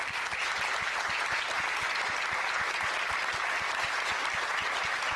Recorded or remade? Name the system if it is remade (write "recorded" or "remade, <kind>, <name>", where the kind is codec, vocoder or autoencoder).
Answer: recorded